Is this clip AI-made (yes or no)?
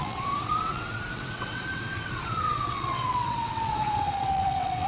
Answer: yes